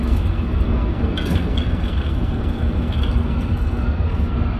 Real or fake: fake